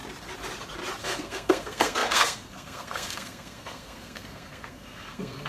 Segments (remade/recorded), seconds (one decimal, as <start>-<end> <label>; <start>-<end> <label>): 0.0-1.0 recorded; 1.0-5.5 remade